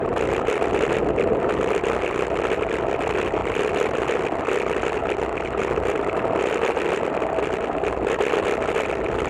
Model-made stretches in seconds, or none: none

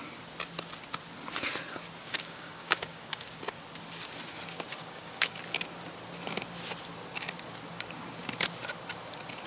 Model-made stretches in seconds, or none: 2.0-3.4 (codec, DAC); 4.7-5.3